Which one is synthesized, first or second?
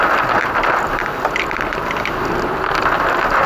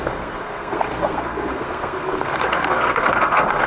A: second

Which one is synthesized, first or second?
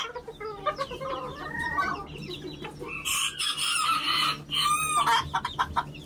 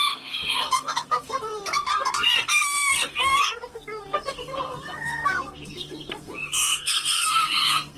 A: second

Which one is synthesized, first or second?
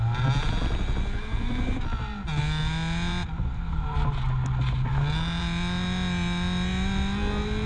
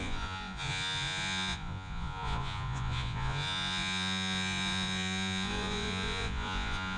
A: second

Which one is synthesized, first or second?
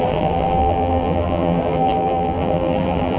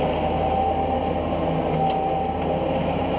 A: first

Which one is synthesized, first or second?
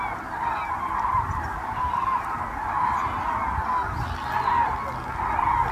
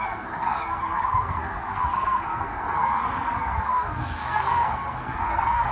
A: second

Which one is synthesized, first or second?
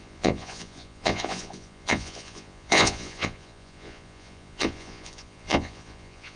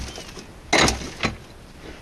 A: first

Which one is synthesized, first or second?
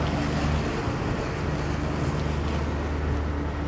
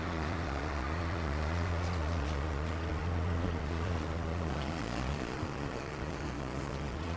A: second